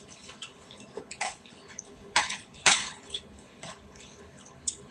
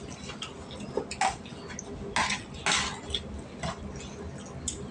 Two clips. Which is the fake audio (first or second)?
first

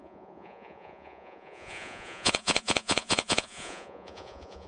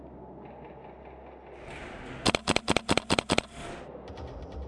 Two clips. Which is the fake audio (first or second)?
first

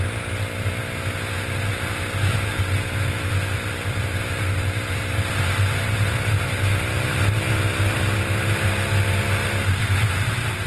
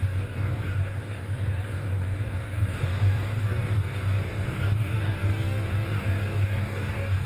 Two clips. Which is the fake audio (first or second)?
second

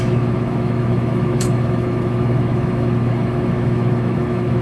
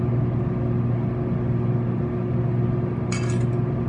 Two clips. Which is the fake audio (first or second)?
first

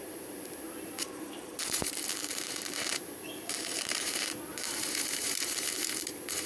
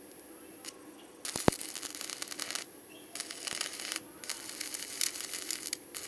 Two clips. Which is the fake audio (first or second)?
first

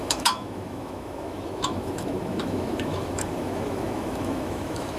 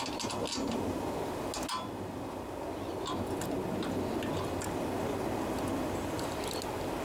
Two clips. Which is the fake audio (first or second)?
first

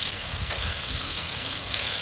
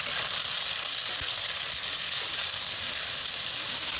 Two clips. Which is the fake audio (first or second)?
first